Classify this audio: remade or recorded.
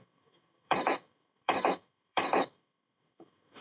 remade